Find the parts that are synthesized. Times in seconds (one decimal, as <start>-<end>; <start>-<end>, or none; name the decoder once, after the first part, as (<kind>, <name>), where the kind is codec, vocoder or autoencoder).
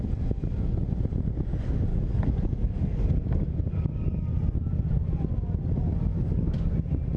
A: 1.9-4.3 (codec, DAC); 6.1-6.7